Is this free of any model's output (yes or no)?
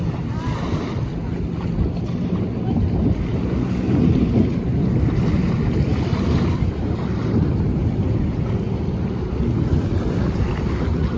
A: yes